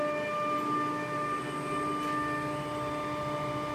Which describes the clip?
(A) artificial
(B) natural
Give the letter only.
B